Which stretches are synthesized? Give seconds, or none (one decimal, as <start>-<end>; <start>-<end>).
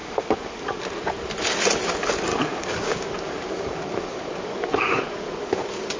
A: 0.0-0.8; 2.3-6.0